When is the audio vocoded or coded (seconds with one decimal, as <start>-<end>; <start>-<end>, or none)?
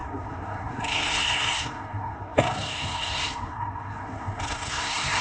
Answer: 0.0-5.2